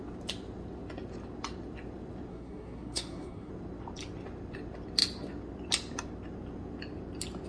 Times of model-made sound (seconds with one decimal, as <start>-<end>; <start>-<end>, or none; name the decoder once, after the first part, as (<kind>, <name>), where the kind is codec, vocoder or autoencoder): 2.3-3.5 (codec, SNAC)